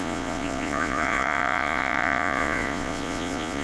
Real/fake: fake